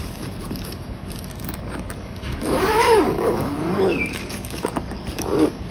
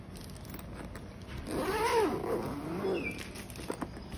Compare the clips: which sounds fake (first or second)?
first